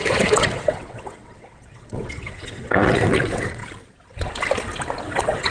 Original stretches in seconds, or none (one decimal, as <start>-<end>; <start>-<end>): 3.6-5.0